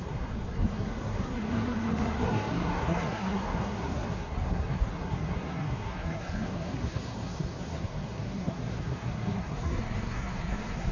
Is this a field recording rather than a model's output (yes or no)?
no